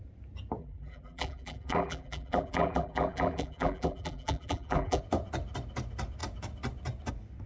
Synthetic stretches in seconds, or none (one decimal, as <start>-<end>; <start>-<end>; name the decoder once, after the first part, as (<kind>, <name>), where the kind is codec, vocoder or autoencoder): 0.6-5.0 (vocoder, BigVGAN v2)